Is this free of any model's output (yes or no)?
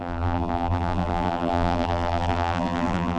no